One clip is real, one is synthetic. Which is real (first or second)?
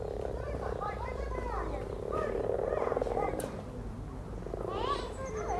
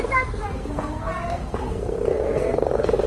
first